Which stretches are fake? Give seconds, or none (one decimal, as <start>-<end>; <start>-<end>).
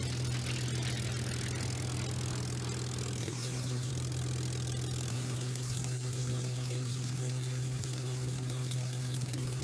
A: 3.2-3.9; 5.1-9.6